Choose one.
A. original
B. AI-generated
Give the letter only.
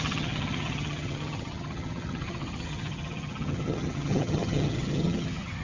B